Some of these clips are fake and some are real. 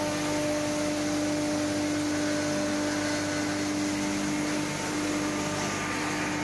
real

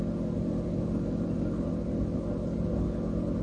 real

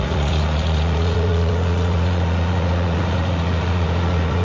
fake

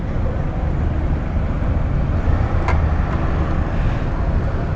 real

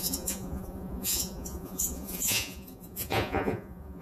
fake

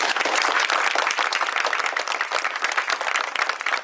real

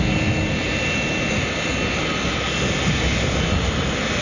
real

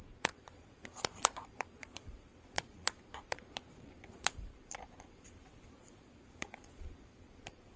fake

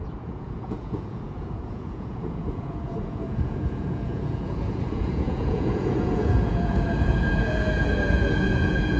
fake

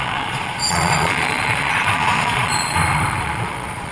fake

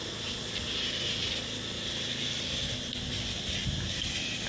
real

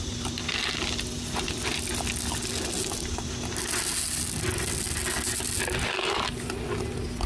real